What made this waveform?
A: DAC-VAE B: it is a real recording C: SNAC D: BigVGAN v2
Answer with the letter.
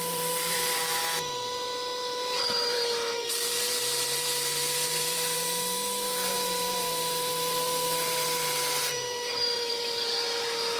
D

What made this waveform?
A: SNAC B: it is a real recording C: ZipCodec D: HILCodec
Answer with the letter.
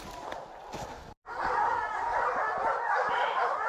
B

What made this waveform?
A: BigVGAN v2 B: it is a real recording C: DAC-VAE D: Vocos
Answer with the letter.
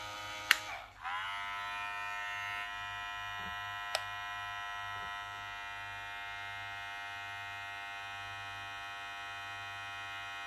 B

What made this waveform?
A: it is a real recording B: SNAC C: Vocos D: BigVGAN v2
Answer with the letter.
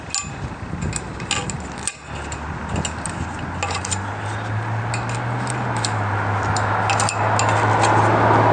A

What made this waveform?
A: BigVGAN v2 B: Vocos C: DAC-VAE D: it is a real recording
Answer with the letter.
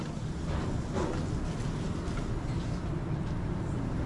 D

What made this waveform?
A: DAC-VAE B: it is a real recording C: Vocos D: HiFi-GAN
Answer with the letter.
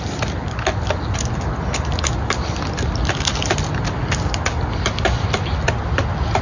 B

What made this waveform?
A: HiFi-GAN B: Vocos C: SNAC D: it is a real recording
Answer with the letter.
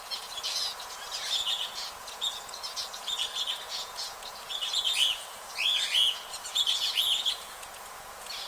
B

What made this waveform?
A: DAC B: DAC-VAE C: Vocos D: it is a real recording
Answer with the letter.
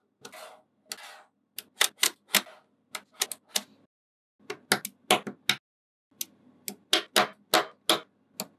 D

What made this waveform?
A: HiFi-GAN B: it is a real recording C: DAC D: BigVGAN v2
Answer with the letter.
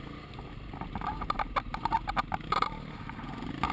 B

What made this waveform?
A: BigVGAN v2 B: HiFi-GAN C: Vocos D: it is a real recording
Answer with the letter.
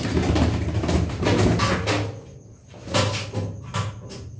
D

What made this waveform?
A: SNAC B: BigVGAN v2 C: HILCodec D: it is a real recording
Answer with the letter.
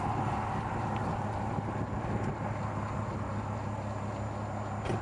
D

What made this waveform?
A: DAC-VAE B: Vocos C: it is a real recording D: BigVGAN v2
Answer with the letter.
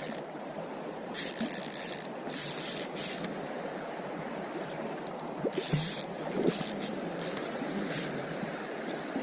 D